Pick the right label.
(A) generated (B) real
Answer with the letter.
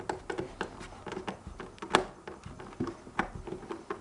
B